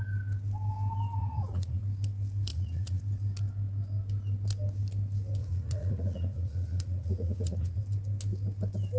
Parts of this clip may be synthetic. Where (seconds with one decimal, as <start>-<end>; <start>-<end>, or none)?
1.2-1.8; 2.5-3.0; 5.4-7.8